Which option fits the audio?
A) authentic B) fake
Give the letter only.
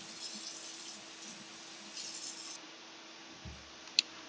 A